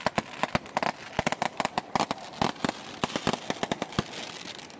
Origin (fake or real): real